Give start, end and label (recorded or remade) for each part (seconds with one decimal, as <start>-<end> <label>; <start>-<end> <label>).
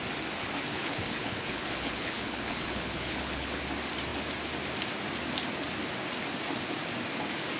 0.0-0.7 recorded; 0.7-3.6 remade; 3.6-7.6 recorded